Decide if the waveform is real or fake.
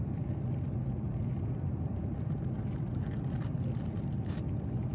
real